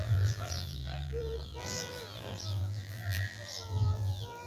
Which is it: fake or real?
fake